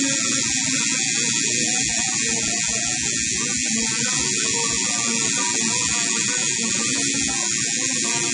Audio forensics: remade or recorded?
recorded